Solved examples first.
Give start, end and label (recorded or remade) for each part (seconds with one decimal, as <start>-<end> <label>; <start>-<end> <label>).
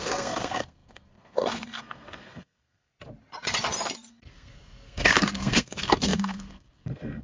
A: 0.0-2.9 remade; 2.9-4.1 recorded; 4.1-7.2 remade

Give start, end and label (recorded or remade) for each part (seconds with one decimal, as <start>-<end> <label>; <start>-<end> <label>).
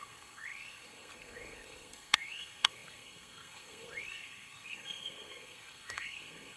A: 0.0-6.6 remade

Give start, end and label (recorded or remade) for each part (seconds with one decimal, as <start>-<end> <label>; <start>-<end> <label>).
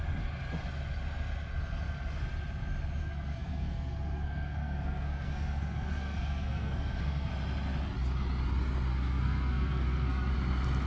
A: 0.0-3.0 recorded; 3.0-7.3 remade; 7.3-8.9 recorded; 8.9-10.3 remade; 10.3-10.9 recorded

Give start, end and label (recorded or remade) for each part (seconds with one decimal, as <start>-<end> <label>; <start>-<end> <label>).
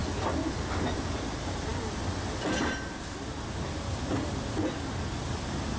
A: 0.0-5.8 recorded